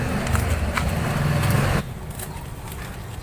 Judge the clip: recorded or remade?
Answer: recorded